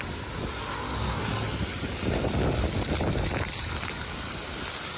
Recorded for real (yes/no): yes